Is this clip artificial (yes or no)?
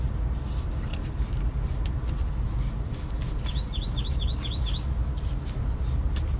no